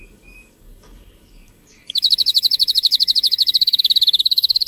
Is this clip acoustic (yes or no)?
no